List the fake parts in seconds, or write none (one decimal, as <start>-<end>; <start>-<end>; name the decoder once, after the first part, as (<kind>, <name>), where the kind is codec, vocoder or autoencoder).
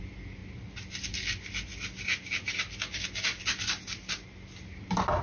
none